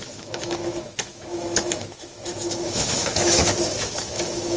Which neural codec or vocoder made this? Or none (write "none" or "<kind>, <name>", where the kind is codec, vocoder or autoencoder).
autoencoder, DAC-VAE